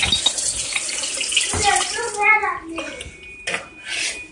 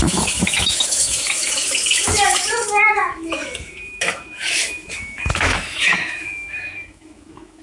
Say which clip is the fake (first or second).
second